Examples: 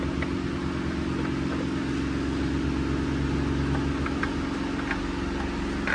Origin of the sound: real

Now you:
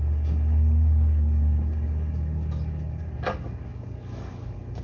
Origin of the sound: fake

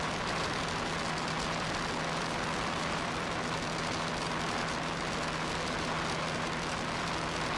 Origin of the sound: real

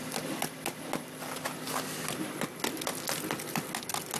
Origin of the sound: real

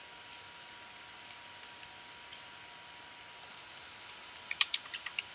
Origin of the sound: real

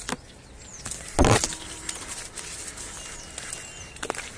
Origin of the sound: real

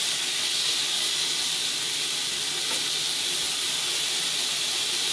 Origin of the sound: real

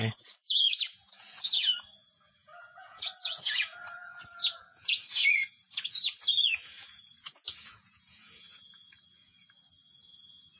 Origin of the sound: fake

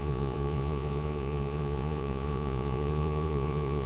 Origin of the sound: fake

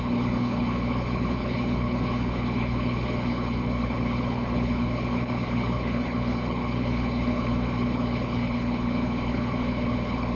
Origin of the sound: fake